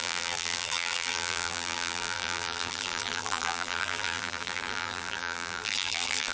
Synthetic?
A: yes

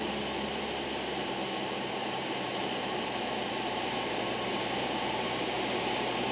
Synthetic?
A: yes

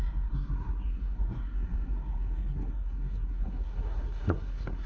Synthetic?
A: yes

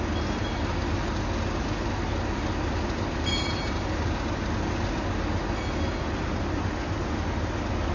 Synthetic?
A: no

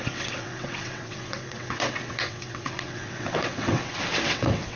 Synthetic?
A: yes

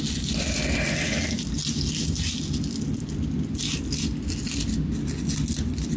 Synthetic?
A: no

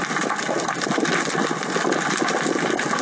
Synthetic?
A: no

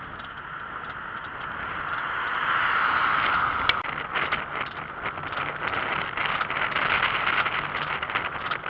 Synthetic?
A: no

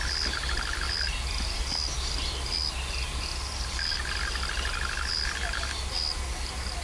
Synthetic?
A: no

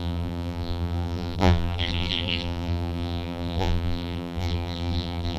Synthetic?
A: yes